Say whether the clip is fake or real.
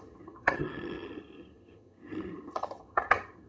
fake